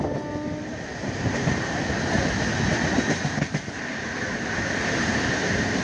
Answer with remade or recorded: recorded